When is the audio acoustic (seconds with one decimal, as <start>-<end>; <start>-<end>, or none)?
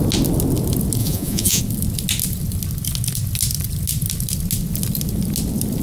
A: 0.0-1.0; 1.6-5.8